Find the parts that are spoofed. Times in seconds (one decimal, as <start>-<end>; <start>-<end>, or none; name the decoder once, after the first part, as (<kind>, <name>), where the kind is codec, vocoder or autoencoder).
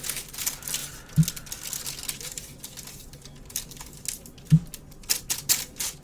none